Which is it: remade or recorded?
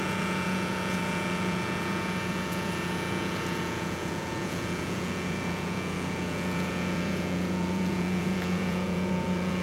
remade